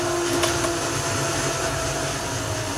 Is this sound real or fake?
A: real